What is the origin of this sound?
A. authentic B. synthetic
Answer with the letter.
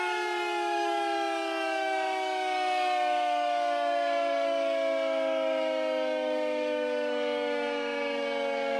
B